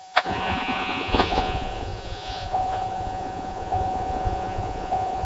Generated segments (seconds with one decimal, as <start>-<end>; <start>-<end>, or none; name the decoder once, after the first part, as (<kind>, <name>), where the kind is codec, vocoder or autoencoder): 0.0-5.2 (vocoder, Vocos)